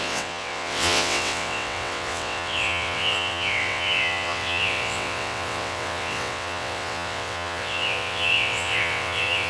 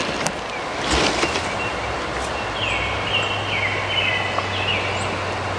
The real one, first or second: second